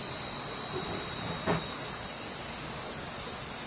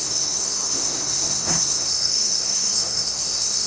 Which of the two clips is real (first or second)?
first